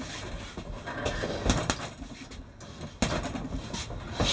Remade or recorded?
recorded